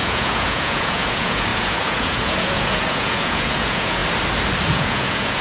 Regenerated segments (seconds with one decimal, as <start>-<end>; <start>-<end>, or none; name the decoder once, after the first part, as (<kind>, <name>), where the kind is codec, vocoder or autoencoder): 0.0-4.0 (vocoder, Vocos); 4.7-5.4